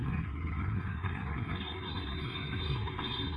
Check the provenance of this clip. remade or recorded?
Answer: remade